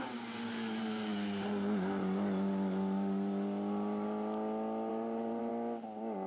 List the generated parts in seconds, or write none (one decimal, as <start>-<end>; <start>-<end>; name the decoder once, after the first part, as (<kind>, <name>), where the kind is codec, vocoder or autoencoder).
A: 0.0-1.1 (vocoder, BigVGAN v2); 4.9-5.5